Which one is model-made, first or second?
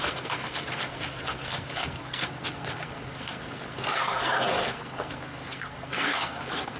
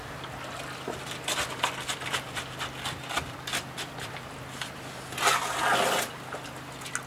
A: first